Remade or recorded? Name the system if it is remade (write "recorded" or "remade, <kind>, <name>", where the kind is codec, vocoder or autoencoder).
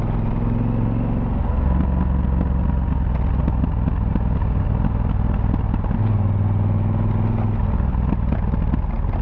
recorded